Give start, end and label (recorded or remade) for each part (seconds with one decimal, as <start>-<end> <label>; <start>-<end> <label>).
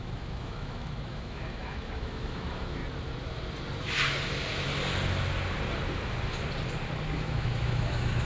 0.0-2.8 remade; 2.8-7.1 recorded; 7.1-8.2 remade